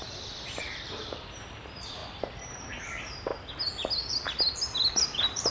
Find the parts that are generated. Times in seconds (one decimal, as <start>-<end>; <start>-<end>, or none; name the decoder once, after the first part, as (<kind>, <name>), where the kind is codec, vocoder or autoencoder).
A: 0.6-3.3 (vocoder, BigVGAN v2); 5.0-5.5